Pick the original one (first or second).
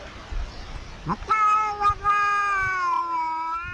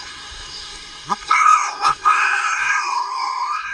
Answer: first